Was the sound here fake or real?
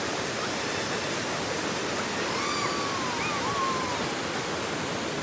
real